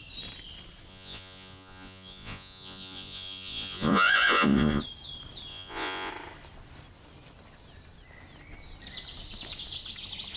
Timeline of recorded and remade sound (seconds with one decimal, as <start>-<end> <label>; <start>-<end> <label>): 0.0-0.9 recorded; 0.9-4.8 remade; 4.8-5.5 recorded; 5.5-6.1 remade; 6.1-10.4 recorded